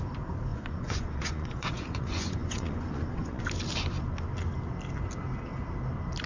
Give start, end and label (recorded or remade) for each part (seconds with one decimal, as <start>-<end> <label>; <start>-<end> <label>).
0.0-0.5 recorded; 0.5-3.4 remade; 3.4-6.3 recorded